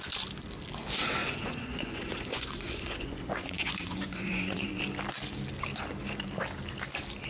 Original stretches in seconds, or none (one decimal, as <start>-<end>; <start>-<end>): 0.0-1.2; 4.8-7.3